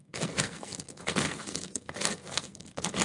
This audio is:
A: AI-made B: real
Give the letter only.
A